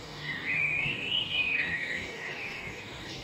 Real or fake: fake